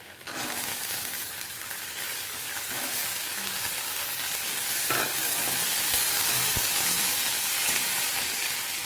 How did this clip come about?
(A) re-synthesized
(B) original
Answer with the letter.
A